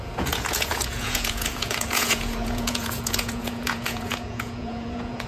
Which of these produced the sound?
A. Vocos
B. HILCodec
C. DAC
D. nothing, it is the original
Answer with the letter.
A